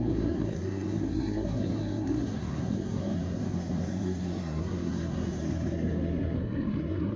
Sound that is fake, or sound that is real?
fake